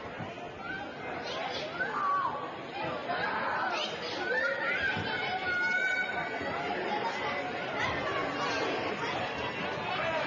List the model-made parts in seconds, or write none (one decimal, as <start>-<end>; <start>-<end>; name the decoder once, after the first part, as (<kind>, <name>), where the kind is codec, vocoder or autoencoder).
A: none